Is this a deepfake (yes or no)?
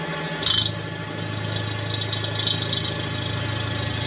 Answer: no